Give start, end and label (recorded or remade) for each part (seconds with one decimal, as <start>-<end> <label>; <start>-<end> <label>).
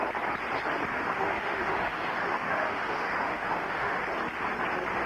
0.0-0.9 recorded; 0.9-4.0 remade; 4.0-5.1 recorded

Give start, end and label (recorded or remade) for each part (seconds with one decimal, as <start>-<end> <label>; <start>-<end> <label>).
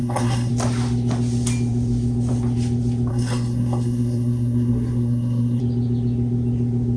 0.0-0.5 remade; 0.5-3.1 recorded; 3.1-5.6 remade; 5.6-7.0 recorded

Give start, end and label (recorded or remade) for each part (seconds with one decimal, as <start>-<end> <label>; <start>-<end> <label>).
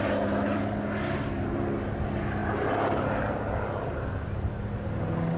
0.0-5.4 recorded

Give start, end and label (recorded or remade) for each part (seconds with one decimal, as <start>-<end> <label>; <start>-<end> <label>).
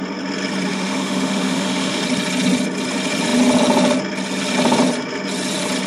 0.0-0.7 recorded; 0.7-2.0 remade; 2.0-5.9 recorded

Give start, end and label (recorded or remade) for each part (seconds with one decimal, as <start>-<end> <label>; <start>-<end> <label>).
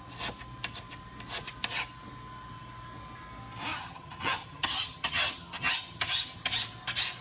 0.0-3.7 recorded; 3.7-6.5 remade; 6.5-7.2 recorded